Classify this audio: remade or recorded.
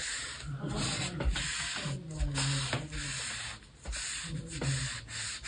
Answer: recorded